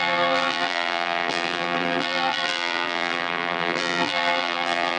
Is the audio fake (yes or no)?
yes